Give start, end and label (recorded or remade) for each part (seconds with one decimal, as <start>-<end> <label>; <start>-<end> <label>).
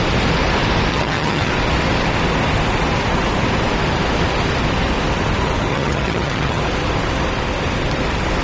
0.0-0.9 recorded; 0.9-1.5 remade; 1.5-5.7 recorded; 5.7-6.6 remade; 6.6-8.4 recorded